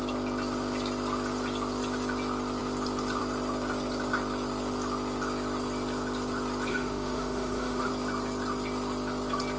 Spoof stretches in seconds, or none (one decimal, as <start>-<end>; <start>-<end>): 6.7-7.9